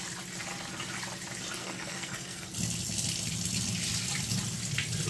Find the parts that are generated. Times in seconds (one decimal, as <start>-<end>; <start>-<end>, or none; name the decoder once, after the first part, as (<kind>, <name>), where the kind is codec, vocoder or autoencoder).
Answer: 1.6-2.5 (codec, SNAC)